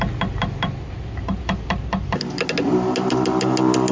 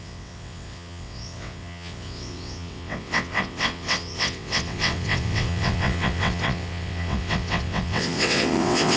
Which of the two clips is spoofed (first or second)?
second